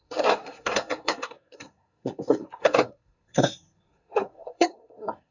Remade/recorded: remade